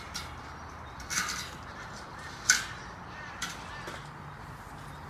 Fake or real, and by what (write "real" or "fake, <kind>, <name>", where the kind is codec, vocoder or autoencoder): real